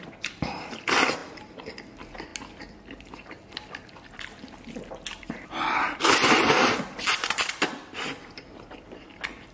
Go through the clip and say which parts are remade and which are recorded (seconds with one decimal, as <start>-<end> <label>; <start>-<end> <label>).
0.0-2.3 remade; 2.3-5.2 recorded; 5.2-9.5 remade